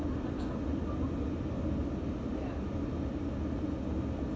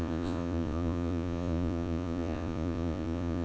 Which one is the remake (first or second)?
second